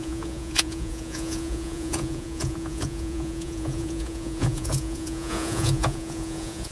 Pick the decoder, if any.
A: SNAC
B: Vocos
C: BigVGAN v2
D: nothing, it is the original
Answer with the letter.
B